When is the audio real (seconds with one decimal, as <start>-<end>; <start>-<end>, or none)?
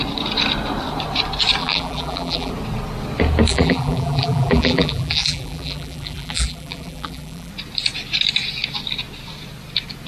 0.0-1.6; 2.5-3.5; 7.5-10.1